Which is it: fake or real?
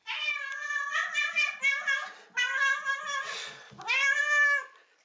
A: real